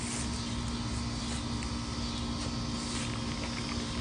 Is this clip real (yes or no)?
yes